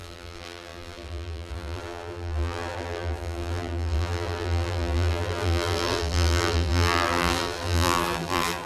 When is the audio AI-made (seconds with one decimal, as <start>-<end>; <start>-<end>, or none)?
0.0-8.7